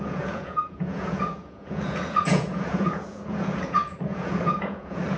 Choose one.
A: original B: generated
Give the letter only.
B